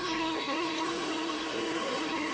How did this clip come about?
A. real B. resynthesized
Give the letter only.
B